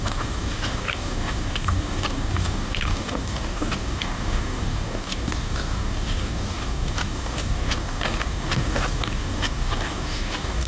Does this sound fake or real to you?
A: fake